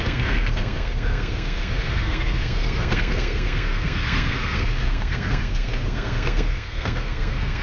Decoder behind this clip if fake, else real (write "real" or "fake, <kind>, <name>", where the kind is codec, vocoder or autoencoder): fake, codec, SNAC